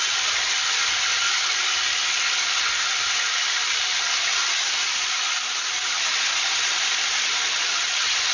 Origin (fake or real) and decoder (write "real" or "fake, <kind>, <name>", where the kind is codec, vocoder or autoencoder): real